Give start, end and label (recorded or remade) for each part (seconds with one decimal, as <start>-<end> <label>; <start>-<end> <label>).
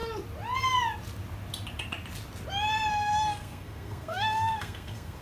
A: 0.0-2.9 recorded; 2.9-5.2 remade